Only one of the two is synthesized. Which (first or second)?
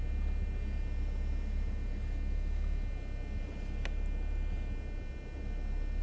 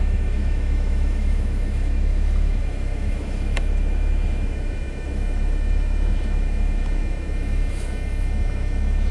second